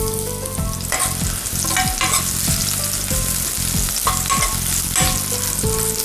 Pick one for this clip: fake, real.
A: real